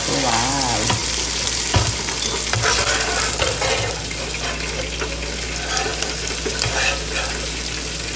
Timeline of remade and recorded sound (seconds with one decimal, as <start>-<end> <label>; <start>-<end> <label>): 0.0-8.2 recorded